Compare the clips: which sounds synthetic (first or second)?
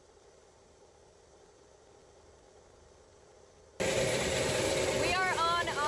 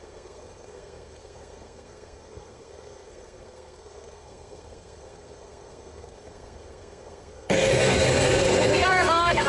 second